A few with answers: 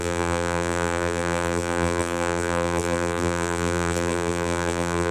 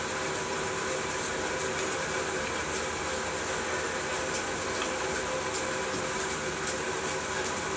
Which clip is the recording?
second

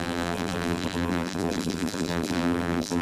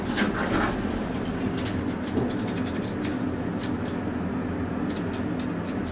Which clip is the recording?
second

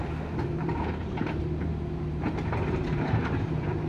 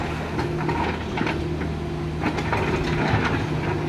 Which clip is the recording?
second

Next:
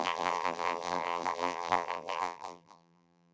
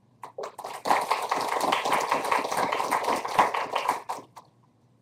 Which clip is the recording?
second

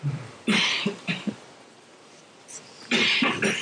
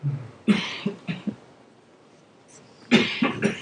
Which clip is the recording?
second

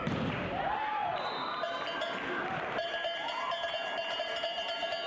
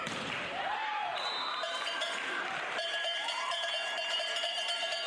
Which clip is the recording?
first